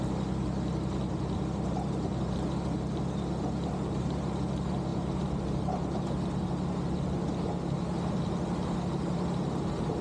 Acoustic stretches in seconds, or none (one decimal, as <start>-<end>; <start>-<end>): 0.0-10.0